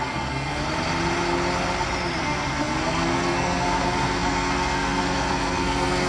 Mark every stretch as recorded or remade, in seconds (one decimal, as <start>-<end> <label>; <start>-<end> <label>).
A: 0.0-0.6 remade; 0.6-2.2 recorded; 2.2-6.1 remade